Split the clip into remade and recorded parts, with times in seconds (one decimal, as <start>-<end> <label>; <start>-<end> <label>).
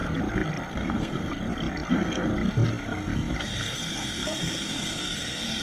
0.0-0.7 recorded; 0.7-1.3 remade; 1.3-1.9 recorded; 1.9-2.3 remade; 2.3-3.4 recorded; 3.4-5.6 remade